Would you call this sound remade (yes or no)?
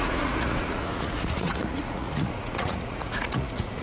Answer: yes